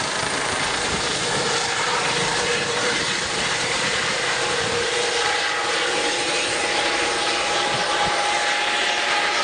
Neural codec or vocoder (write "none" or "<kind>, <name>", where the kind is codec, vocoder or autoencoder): vocoder, BigVGAN v2